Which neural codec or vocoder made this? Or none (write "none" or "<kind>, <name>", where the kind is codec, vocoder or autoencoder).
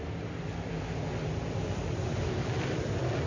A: vocoder, BigVGAN v2